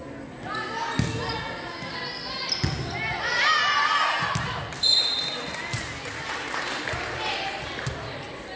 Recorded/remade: recorded